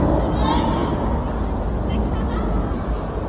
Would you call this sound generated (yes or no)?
no